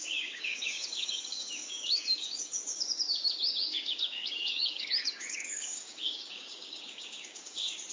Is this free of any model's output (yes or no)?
no